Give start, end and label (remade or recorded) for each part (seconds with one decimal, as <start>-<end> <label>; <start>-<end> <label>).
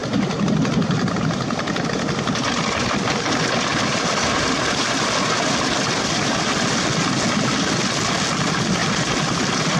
0.0-9.8 recorded